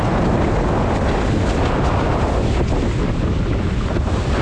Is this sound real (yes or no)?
yes